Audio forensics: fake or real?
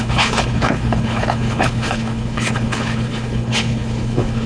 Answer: fake